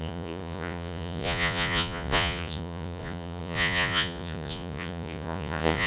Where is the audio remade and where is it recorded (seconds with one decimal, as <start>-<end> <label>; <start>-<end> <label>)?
0.0-5.9 remade